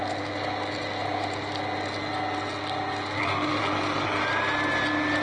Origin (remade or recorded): recorded